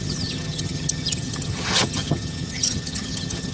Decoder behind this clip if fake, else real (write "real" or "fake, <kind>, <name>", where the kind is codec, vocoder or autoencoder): fake, vocoder, HiFi-GAN